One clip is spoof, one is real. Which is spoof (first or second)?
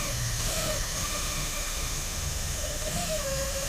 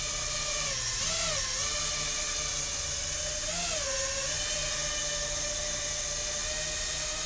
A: first